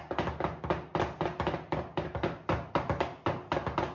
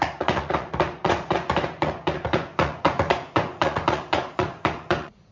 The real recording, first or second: first